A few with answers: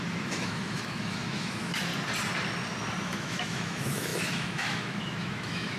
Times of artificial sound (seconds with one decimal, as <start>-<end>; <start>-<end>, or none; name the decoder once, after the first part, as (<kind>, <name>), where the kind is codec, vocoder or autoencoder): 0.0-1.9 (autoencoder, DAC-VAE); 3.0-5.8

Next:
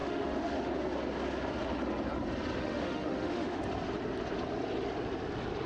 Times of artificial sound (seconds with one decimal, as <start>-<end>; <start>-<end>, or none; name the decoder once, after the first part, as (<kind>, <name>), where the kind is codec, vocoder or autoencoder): 0.0-0.7 (autoencoder, DAC-VAE); 2.6-3.6

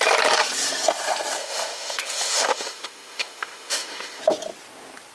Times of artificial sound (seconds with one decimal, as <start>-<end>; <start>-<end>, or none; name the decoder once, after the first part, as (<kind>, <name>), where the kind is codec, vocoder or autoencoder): 1.4-4.2 (autoencoder, DAC-VAE)

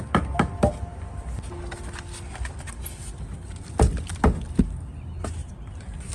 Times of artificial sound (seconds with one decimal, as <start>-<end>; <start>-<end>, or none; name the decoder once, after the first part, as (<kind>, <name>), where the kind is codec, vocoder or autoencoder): none

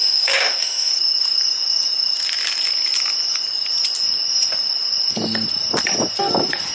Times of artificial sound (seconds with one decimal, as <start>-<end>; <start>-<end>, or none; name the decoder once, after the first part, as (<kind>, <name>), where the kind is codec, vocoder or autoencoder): 0.0-0.9 (autoencoder, DAC-VAE)

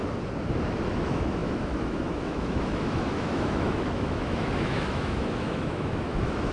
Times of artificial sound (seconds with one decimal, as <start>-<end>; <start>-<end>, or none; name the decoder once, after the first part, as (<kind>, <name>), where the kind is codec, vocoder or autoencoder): 0.9-6.5 (autoencoder, DAC-VAE)

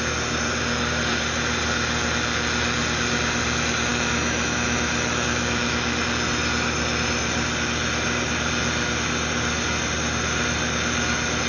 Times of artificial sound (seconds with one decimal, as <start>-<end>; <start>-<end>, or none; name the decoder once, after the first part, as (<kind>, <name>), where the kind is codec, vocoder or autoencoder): 3.9-6.0 (autoencoder, DAC-VAE)